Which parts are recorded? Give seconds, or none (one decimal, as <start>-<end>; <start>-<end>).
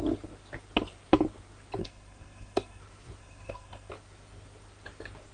0.0-1.8; 2.8-3.2; 3.9-5.3